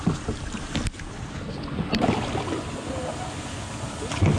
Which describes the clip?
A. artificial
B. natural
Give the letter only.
B